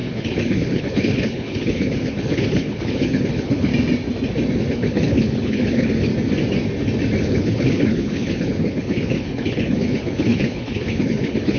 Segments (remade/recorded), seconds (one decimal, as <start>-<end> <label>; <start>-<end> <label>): 0.0-3.7 remade; 3.7-4.7 recorded; 4.7-6.1 remade; 6.1-7.2 recorded; 7.2-11.6 remade